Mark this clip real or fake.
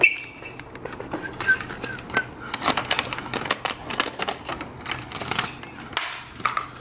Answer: real